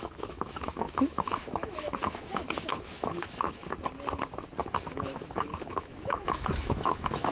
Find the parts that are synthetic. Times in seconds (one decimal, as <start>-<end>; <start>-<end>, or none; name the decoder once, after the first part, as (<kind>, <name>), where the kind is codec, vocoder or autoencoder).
0.0-3.6 (autoencoder, DAC-VAE); 4.6-7.3

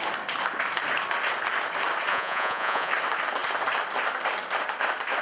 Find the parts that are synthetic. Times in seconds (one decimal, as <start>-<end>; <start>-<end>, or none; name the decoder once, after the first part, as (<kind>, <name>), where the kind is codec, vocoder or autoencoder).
2.1-2.9 (vocoder, Vocos)

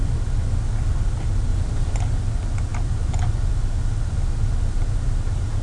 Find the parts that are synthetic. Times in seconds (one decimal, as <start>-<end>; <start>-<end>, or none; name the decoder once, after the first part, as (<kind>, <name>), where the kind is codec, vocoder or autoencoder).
1.5-2.0 (vocoder, BigVGAN v2)

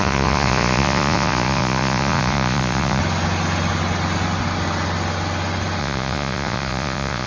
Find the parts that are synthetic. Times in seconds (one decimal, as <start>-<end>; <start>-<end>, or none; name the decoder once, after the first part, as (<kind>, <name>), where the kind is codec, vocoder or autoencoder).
0.0-3.0 (vocoder, Vocos); 5.8-7.3

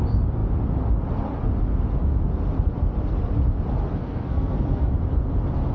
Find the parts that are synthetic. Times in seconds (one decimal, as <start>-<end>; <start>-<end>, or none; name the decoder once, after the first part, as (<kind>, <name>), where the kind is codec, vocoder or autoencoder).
4.0-4.9 (codec, SNAC)

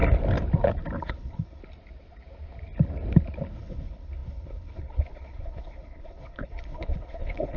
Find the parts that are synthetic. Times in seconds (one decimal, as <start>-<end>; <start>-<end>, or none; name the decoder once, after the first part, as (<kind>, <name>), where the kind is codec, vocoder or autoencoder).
1.0-1.6 (codec, HILCodec); 3.5-7.6

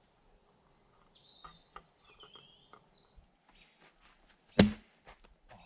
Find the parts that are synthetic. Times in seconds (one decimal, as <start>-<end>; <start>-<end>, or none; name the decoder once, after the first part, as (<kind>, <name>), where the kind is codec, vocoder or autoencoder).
none

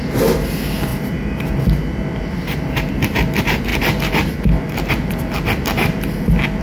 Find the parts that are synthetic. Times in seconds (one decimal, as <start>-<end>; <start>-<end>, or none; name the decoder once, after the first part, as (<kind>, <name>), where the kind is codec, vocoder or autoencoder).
none